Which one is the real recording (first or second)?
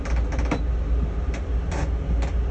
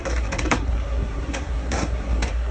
first